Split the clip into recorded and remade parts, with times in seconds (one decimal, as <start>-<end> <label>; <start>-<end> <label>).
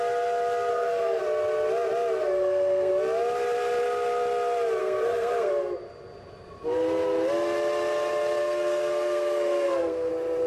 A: 0.0-0.7 recorded; 0.7-1.2 remade; 1.2-2.2 recorded; 2.2-2.9 remade; 2.9-4.8 recorded; 4.8-5.5 remade; 5.5-8.4 recorded; 8.4-10.1 remade; 10.1-10.5 recorded